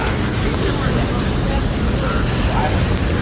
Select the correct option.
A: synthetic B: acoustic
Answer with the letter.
B